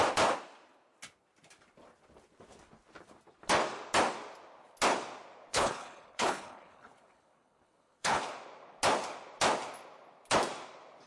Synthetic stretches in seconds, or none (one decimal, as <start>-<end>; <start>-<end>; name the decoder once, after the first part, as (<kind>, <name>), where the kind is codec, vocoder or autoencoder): 5.5-8.2 (codec, HILCodec)